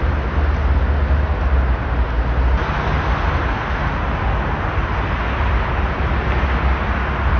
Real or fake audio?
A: real